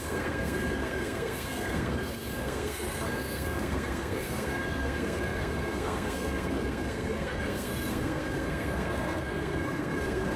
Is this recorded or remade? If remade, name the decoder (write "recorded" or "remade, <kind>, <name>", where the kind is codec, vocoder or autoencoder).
remade, codec, SNAC